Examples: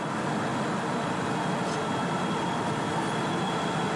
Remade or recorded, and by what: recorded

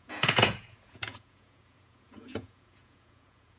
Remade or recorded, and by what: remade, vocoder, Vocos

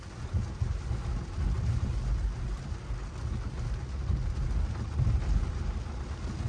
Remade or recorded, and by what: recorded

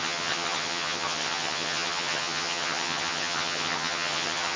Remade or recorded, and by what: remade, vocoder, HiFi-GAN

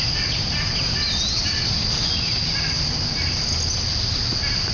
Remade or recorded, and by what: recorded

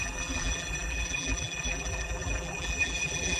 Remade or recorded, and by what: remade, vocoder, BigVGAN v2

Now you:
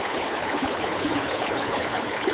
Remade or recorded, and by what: remade, codec, HILCodec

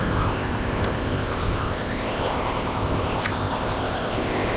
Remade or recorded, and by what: remade, codec, ZipCodec